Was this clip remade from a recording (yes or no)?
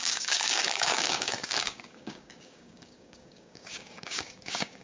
yes